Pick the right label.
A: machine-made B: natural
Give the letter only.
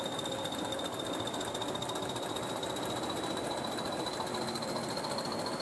B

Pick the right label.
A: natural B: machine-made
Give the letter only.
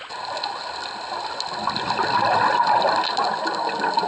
A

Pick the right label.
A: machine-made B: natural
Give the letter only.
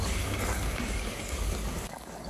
A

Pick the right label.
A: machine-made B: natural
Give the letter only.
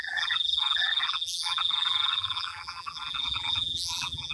A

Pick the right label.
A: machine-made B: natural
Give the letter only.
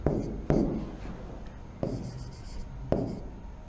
B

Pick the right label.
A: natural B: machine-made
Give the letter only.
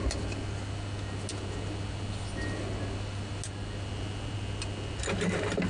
A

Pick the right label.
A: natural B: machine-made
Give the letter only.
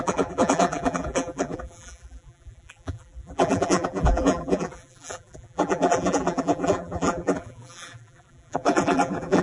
B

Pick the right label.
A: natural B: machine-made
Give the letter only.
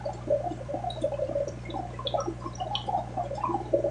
B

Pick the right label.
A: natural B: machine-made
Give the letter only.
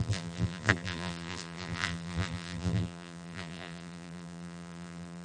B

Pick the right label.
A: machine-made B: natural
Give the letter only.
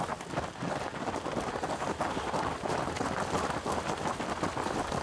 B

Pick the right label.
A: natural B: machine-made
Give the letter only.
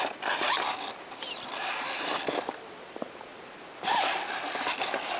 A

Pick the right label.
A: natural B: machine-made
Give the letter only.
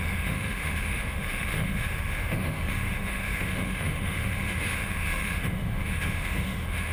B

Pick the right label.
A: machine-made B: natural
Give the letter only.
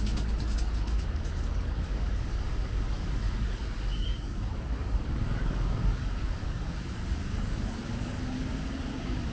A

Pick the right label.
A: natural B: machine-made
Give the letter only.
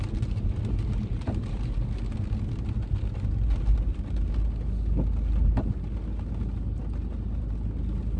A